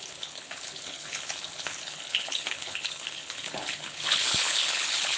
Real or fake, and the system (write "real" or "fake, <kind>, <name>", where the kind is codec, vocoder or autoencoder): fake, codec, HILCodec